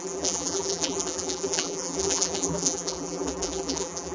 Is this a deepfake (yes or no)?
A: yes